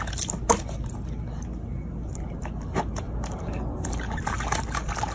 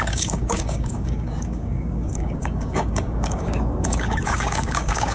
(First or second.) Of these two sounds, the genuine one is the first